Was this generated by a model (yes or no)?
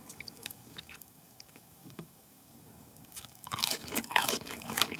yes